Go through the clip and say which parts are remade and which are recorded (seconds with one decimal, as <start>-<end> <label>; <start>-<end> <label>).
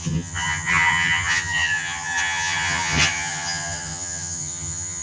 0.0-5.0 remade